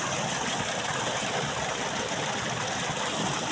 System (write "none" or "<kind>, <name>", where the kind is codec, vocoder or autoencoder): none